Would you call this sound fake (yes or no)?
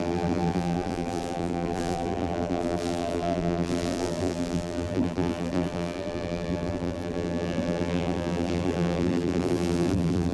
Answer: yes